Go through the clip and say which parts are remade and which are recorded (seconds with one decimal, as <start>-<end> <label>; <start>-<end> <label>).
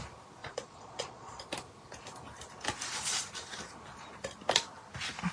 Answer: 0.0-0.4 recorded; 0.4-1.4 remade; 1.4-5.3 recorded